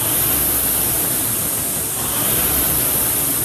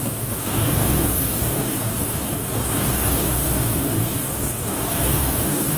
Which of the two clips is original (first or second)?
first